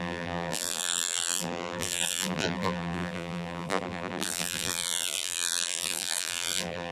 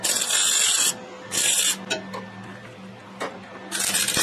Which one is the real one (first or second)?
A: second